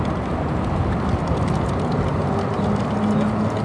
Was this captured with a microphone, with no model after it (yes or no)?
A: yes